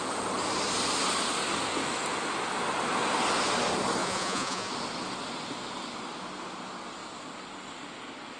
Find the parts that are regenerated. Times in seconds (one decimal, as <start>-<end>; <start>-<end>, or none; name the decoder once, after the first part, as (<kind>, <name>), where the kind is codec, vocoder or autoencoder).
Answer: 4.0-4.7 (vocoder, Vocos)